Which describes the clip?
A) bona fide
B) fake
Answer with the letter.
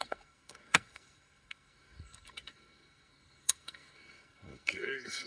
B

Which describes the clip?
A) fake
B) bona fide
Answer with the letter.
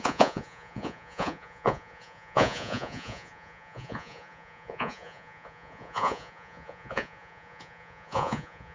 A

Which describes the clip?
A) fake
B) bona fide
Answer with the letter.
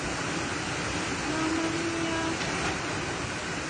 B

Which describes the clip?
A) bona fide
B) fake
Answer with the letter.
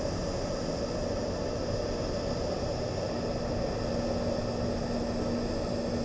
A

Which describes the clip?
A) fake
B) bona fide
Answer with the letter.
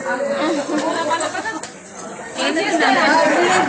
B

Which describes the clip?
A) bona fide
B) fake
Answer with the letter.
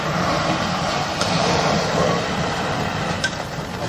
B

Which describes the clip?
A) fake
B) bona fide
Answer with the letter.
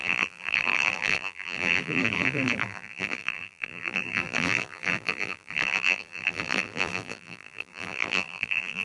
A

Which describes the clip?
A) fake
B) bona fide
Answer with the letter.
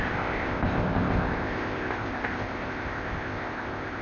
A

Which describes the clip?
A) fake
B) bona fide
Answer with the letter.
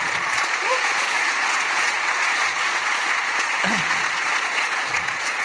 A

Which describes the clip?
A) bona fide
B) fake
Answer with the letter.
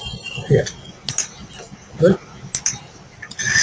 A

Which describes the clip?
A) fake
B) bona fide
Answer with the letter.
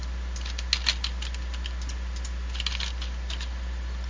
B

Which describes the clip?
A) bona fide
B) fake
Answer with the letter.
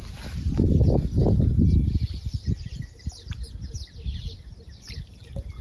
A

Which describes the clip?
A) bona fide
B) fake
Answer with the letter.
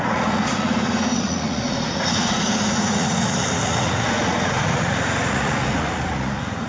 B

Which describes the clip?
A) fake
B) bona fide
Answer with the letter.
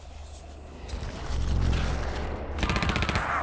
B